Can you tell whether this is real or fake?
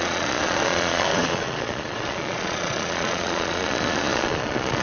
fake